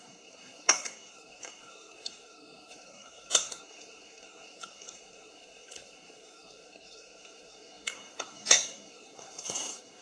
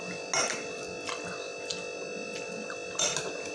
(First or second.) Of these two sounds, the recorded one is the second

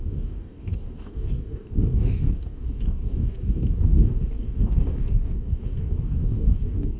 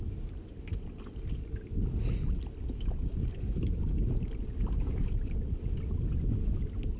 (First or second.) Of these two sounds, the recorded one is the second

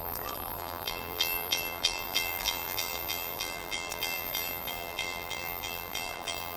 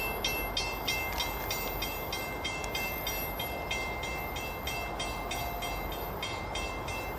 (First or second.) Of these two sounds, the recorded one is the second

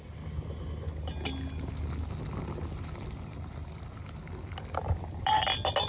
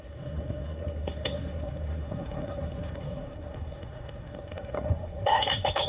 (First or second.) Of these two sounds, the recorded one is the first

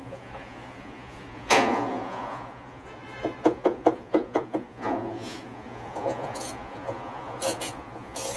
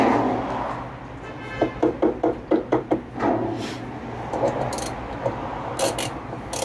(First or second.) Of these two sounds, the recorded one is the second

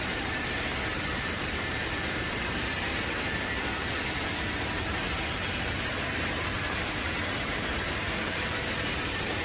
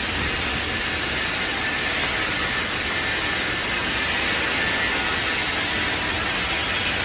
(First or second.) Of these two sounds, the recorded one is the second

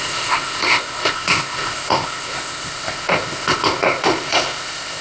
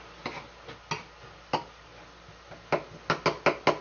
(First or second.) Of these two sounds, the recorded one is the second